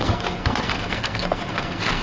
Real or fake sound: fake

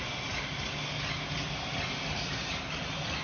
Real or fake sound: real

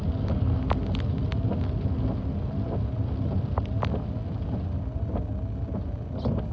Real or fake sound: real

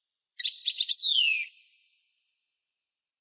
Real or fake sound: real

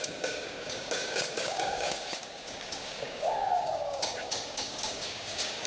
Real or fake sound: fake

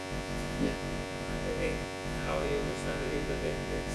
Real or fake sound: fake